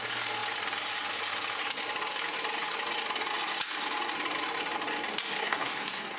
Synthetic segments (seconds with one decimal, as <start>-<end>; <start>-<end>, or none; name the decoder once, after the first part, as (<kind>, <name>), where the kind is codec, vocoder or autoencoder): 5.4-6.2 (codec, SNAC)